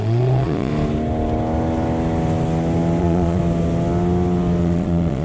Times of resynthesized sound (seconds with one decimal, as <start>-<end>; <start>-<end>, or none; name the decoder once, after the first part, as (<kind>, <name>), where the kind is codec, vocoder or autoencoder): 0.0-0.7 (vocoder, Vocos); 3.0-3.4; 4.6-5.2

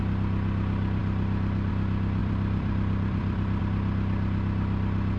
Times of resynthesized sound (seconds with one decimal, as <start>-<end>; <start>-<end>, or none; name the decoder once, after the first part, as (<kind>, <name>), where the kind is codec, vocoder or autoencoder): 2.2-3.6 (vocoder, BigVGAN v2)

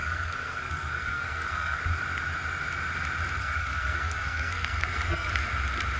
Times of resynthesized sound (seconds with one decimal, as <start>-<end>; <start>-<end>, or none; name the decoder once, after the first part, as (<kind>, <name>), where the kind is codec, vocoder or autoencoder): 0.0-1.8 (codec, SNAC); 3.4-5.3

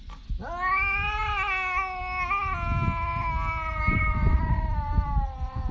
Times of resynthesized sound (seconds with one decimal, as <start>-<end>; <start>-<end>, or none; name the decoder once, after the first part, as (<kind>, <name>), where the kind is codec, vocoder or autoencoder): 3.7-5.7 (vocoder, BigVGAN v2)

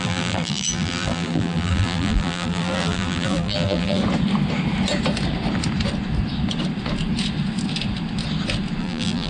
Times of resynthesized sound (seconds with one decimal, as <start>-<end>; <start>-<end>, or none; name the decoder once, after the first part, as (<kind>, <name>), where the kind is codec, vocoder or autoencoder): 0.0-4.0 (vocoder, BigVGAN v2); 8.8-9.3

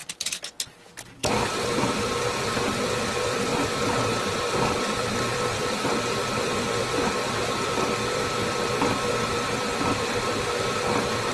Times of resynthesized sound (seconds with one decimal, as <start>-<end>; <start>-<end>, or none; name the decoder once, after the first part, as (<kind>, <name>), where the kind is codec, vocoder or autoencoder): 0.0-11.3 (vocoder, BigVGAN v2)

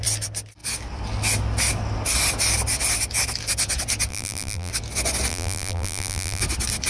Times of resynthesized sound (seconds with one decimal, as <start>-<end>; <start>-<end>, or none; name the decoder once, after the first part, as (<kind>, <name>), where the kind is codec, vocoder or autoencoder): 4.1-4.7 (vocoder, BigVGAN v2); 5.3-6.4

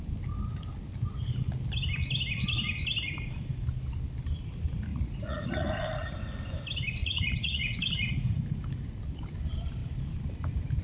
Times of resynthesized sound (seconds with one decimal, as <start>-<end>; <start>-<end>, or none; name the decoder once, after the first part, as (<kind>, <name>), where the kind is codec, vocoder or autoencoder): 4.9-6.1 (vocoder, Vocos); 7.0-8.4